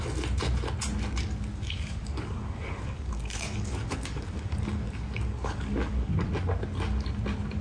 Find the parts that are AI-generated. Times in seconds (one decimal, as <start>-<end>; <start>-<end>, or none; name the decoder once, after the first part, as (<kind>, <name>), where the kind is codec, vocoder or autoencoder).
1.5-6.1 (codec, DAC)

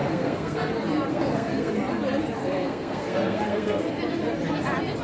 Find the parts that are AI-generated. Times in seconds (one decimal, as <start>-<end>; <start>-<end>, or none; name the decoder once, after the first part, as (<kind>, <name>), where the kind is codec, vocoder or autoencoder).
0.0-0.7 (codec, SNAC); 1.1-1.7; 2.4-3.9

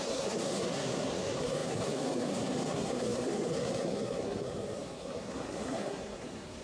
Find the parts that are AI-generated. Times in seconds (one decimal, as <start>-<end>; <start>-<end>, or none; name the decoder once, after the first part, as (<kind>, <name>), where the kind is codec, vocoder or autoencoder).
0.0-6.6 (codec, SNAC)

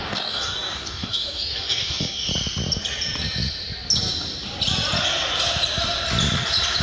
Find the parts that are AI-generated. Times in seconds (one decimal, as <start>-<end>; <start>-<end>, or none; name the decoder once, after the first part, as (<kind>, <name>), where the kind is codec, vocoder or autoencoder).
0.0-2.3 (codec, DAC)

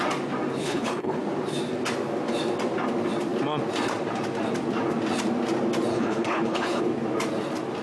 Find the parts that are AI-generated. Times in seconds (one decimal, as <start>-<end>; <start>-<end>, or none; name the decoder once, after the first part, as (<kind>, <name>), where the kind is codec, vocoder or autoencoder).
0.6-1.2 (codec, HILCodec); 5.9-6.8

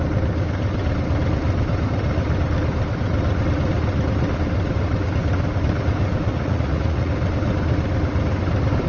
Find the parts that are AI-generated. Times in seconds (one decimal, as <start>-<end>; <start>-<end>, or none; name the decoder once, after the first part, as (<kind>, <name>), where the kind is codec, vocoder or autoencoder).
6.3-7.1 (vocoder, Vocos)

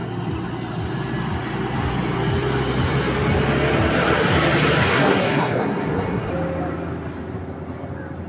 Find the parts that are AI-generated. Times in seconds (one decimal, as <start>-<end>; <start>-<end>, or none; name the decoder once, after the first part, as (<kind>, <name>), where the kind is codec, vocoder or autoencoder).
4.9-6.3 (codec, SNAC)